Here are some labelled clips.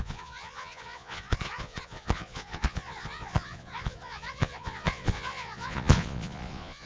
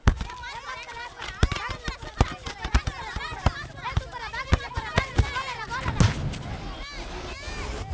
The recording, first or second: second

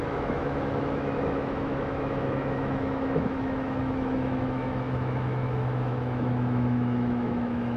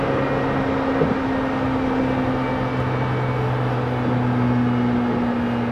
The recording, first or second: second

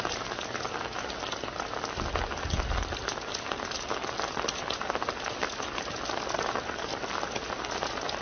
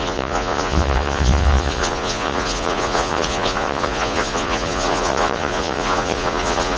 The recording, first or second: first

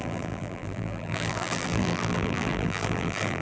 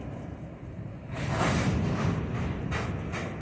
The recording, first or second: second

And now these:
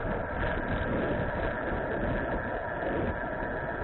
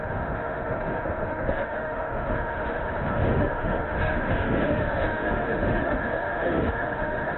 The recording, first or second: first